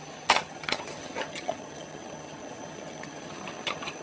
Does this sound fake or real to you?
fake